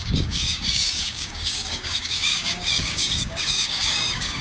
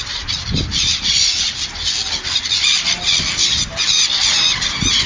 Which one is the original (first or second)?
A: second